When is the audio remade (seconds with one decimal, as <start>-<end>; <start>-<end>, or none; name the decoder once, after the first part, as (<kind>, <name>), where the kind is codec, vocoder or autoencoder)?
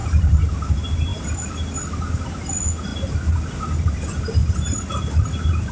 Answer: none